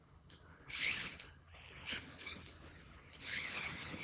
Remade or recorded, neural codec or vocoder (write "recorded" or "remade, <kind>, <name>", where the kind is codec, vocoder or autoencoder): remade, codec, HILCodec